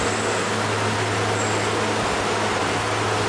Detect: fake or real real